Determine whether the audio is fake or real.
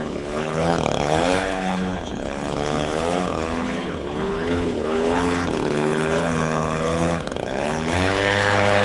fake